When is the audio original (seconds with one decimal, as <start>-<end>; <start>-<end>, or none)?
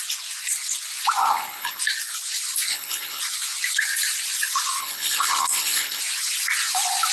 0.0-1.2; 1.8-2.7; 3.2-4.8; 6.0-7.1